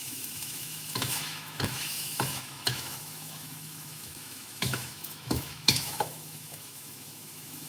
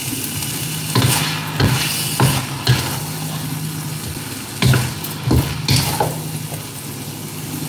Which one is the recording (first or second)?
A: second